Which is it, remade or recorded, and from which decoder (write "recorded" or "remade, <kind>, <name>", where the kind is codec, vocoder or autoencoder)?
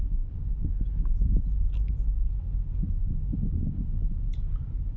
recorded